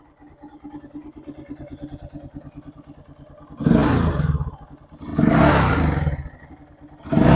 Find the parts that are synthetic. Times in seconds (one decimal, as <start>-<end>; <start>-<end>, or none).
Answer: none